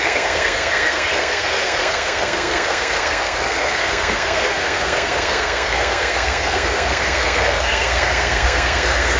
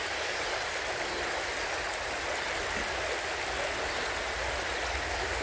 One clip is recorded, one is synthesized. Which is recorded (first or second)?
second